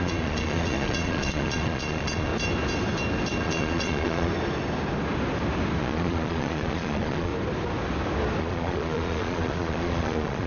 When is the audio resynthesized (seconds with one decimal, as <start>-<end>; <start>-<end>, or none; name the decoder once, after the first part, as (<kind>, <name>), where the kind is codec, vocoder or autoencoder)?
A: 0.0-2.3 (vocoder, Vocos); 3.4-4.3; 5.8-7.3; 8.4-10.5